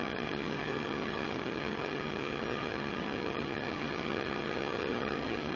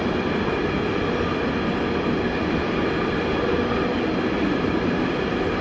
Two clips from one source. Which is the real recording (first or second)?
second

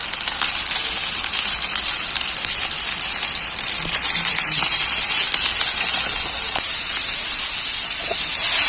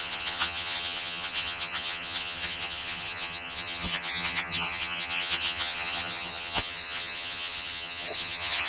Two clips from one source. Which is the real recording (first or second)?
first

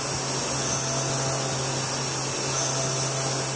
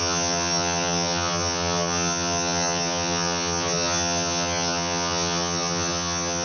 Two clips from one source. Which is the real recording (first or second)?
first